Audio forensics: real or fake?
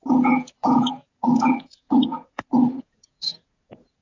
fake